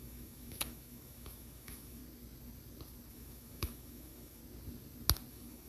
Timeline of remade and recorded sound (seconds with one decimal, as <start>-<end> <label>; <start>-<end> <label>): 0.0-2.0 remade; 2.0-3.1 recorded; 3.1-4.4 remade; 4.4-5.3 recorded; 5.3-5.7 remade